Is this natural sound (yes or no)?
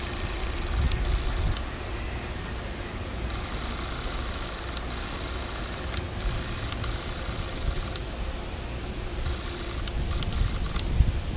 yes